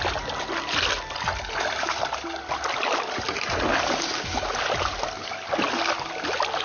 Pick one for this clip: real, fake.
real